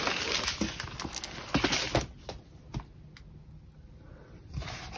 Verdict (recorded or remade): recorded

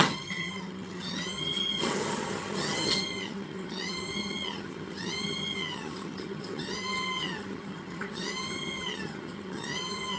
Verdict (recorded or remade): remade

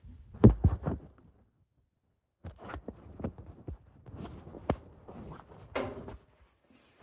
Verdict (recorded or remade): recorded